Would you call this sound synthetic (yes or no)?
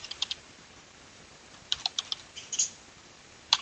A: yes